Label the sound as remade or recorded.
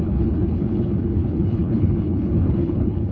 remade